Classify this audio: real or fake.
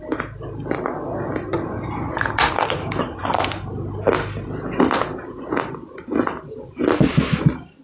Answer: real